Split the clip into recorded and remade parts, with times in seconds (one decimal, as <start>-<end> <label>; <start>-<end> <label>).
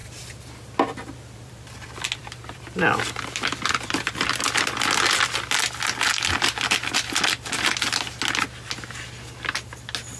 0.0-4.4 remade; 4.4-10.2 recorded